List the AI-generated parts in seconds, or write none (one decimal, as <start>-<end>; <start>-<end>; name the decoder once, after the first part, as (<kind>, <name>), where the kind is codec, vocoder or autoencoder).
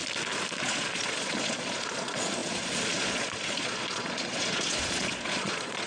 0.6-5.9 (vocoder, Vocos)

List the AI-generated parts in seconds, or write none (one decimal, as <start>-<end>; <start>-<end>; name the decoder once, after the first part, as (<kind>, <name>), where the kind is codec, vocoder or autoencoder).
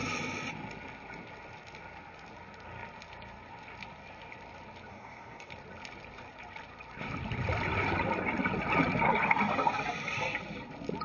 4.9-5.5 (codec, DAC)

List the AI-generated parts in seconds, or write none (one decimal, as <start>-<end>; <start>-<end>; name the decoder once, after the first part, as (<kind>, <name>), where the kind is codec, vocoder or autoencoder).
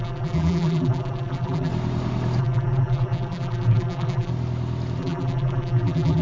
0.0-1.7 (vocoder, BigVGAN v2); 2.4-4.3; 5.0-6.2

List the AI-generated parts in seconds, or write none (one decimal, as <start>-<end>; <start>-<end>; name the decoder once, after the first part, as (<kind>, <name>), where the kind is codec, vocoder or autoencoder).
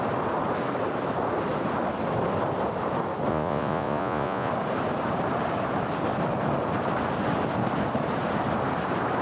3.3-4.5 (vocoder, Vocos)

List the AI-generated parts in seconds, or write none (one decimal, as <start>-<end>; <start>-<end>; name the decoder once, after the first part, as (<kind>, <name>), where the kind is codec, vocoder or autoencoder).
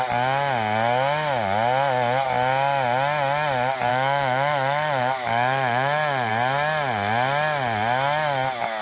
3.9-6.3 (autoencoder, DAC-VAE)